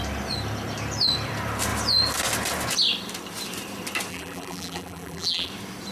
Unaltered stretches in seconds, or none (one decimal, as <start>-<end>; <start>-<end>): 0.0-4.1; 5.5-5.9